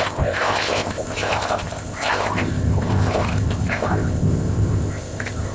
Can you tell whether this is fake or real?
fake